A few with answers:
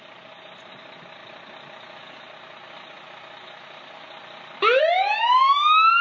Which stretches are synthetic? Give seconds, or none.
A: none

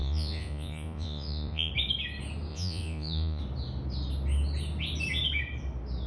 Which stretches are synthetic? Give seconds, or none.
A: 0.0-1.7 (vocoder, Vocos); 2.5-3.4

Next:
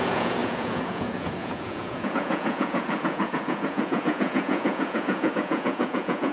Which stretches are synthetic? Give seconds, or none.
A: 0.0-6.3 (vocoder, Vocos)